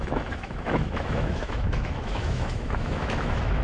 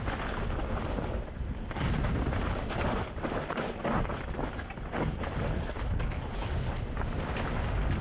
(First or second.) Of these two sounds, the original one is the second